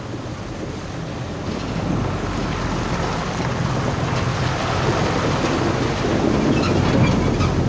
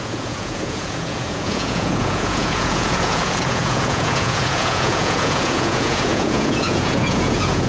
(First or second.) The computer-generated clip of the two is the second